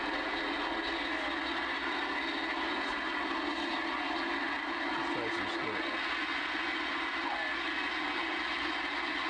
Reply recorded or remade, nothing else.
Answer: recorded